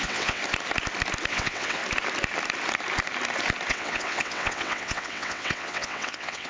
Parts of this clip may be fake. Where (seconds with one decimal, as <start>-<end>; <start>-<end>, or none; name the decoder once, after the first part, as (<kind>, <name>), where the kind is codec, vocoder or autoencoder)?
0.0-0.4 (vocoder, WaveNeXt); 1.3-1.8; 3.7-6.5